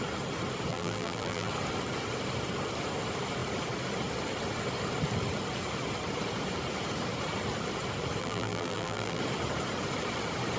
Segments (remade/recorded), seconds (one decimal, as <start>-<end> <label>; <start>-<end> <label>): 0.0-0.7 recorded; 0.7-1.5 remade; 1.5-8.2 recorded; 8.2-9.2 remade; 9.2-10.6 recorded